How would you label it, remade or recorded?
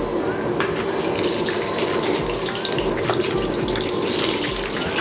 recorded